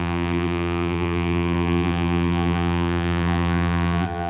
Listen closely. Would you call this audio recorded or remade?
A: remade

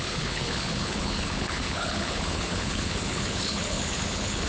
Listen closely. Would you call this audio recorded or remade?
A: remade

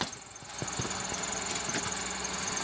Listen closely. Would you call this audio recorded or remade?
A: recorded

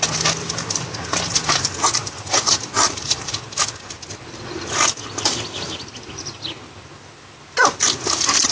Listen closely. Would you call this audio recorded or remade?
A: recorded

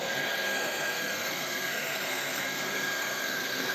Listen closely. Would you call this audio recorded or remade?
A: remade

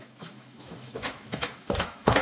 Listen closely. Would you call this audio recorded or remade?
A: remade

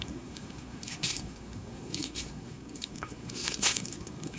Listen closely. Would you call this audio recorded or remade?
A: remade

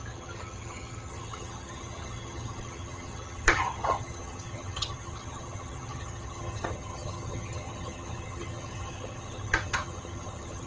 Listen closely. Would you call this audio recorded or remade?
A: remade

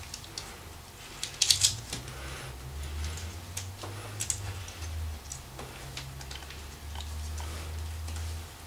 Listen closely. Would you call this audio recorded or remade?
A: recorded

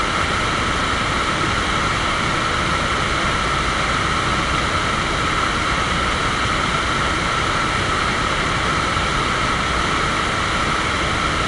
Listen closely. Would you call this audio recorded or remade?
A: recorded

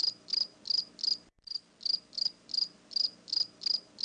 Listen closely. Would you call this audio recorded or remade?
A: recorded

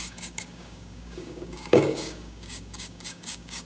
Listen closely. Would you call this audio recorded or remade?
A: remade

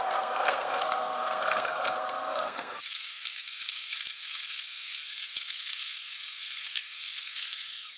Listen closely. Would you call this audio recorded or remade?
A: remade